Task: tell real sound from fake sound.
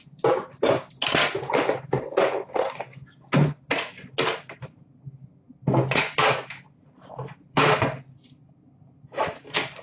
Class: real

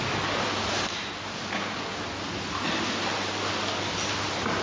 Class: real